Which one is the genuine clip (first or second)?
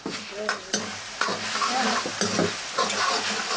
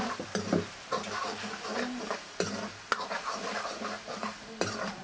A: first